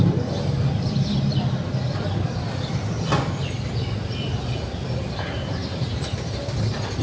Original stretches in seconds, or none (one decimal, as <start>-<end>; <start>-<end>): 0.0-7.0